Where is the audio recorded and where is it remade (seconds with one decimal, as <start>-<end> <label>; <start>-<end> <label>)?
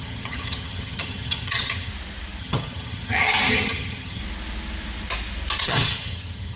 0.0-1.9 remade; 1.9-2.4 recorded; 2.4-4.2 remade; 4.2-5.6 recorded; 5.6-6.6 remade